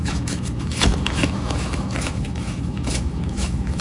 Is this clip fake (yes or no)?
yes